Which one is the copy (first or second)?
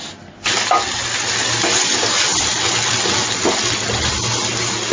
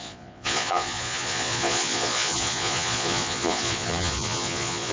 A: second